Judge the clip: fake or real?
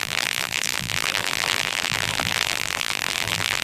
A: fake